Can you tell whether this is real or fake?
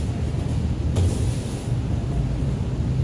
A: real